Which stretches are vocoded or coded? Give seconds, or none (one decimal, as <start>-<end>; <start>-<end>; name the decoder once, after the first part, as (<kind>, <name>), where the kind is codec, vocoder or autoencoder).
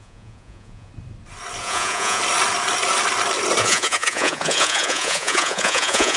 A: 0.0-0.9 (vocoder, Vocos); 1.6-2.2; 3.6-6.2